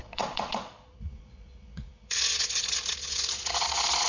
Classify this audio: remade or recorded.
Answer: remade